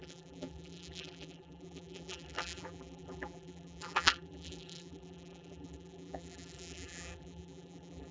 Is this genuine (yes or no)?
no